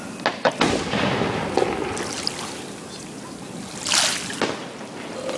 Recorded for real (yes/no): yes